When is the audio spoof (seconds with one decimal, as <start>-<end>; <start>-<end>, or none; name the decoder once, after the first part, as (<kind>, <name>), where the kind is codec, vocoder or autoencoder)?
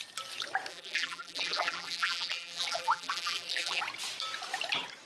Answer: 0.7-3.8 (vocoder, BigVGAN v2)